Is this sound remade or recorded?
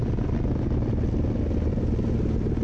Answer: recorded